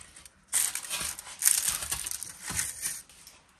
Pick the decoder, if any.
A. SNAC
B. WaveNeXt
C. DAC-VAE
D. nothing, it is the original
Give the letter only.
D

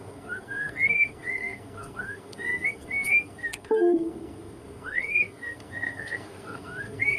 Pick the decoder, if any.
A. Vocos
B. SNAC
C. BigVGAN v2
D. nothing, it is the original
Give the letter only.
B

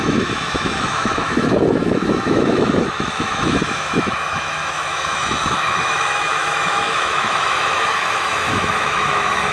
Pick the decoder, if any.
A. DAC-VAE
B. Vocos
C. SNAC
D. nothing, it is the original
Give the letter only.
A